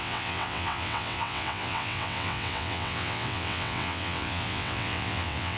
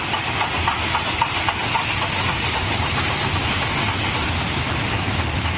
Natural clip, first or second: second